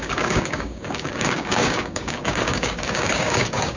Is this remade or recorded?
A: remade